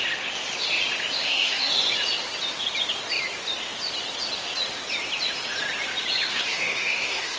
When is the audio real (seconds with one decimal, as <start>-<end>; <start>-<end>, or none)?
0.0-1.2; 1.7-6.3